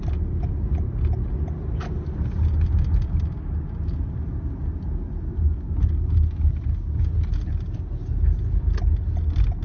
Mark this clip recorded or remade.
recorded